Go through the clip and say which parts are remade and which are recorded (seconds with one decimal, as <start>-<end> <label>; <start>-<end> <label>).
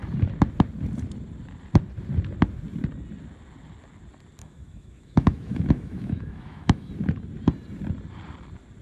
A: 0.0-4.4 recorded; 4.4-6.9 remade; 6.9-8.8 recorded